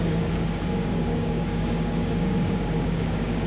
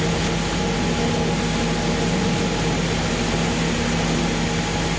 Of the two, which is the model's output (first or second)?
first